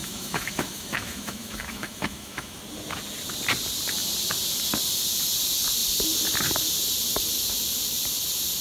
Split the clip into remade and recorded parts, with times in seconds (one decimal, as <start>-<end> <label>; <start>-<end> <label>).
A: 0.0-2.6 remade; 2.6-8.6 recorded